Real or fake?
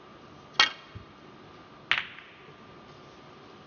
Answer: real